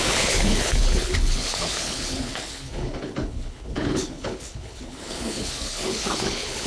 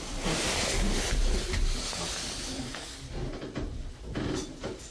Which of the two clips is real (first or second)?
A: second